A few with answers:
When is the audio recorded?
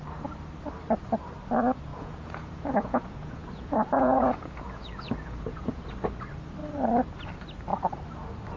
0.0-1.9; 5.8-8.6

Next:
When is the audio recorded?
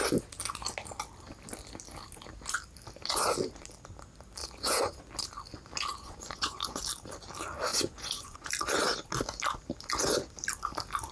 0.0-4.4; 5.0-5.9; 6.8-7.7; 8.5-11.1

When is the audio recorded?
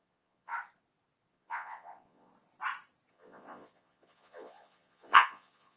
0.5-1.3; 2.3-3.1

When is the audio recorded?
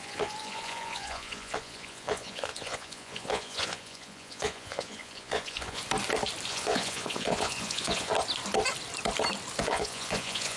5.8-6.5; 8.1-9.6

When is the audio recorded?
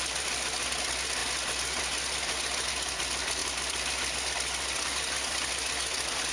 0.0-6.3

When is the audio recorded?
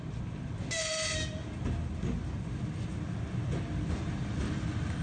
0.0-5.0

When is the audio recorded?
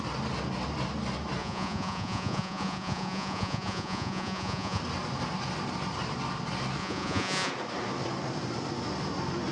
0.0-1.4; 4.8-6.8; 7.5-9.5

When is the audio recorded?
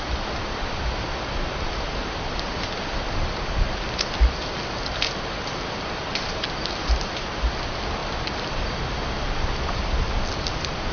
0.0-10.9